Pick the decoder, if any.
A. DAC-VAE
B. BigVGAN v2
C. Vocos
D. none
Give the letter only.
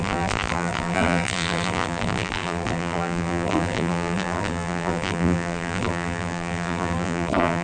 B